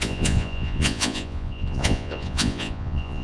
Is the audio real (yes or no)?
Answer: no